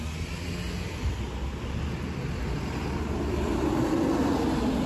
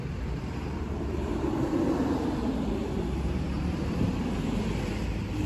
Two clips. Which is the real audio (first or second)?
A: first